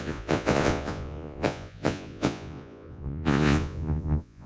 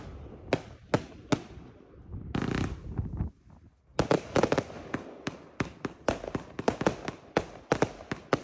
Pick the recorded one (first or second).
second